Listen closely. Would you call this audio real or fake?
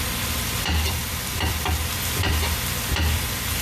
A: fake